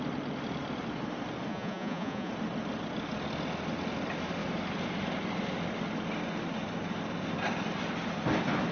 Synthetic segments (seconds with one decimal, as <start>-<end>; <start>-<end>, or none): 1.5-2.3